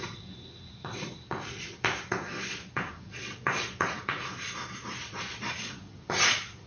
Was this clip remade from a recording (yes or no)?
yes